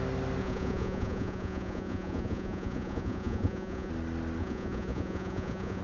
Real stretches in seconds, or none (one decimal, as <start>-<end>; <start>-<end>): 0.0-0.4; 3.9-4.4